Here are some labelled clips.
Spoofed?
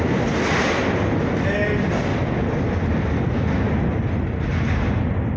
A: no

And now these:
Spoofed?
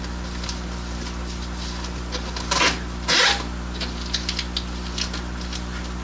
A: no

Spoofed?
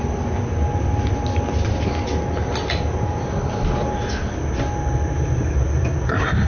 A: no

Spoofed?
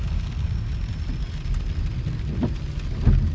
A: no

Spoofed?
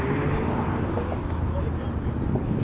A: no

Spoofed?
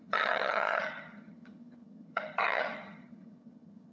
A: yes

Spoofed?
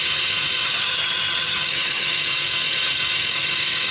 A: yes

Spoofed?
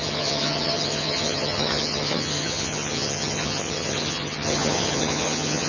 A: yes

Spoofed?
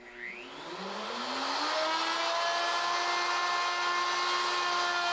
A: no